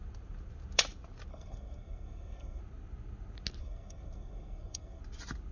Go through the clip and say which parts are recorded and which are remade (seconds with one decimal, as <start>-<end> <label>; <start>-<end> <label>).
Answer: 0.0-1.3 recorded; 1.3-2.6 remade; 2.6-3.6 recorded; 3.6-5.0 remade; 5.0-5.5 recorded